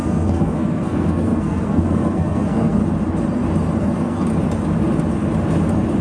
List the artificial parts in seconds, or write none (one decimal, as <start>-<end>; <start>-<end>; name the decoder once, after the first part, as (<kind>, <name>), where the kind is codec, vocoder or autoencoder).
0.0-2.8 (codec, SNAC); 3.8-4.3